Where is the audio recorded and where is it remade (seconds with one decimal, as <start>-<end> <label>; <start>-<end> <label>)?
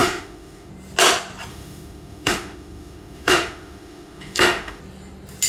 0.0-0.7 remade; 0.7-1.5 recorded; 1.5-4.8 remade; 4.8-5.5 recorded